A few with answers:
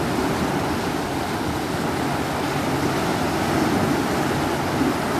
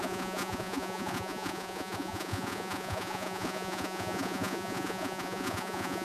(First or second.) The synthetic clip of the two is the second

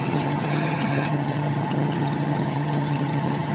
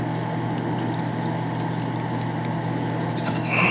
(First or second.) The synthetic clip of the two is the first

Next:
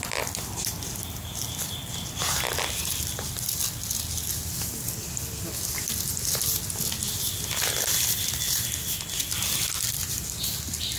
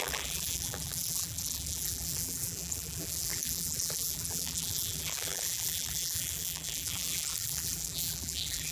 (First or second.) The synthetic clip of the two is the second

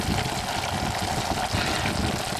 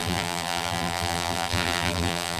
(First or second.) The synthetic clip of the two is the second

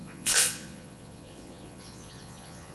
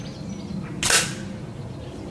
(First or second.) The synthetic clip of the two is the first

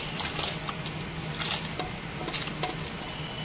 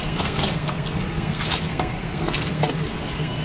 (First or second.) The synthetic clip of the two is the second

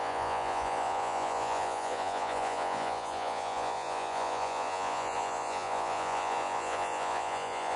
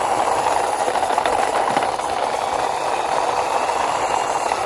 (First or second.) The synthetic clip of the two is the first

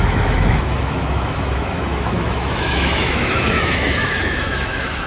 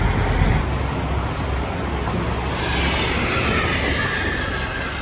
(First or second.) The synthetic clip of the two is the first